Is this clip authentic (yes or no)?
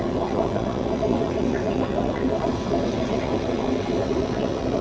no